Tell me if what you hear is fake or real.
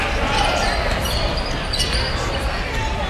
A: real